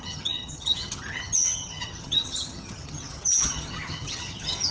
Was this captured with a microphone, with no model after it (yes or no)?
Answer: no